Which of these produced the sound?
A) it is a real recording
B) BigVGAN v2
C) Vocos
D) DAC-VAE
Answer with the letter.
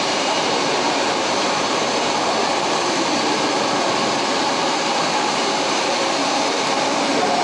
B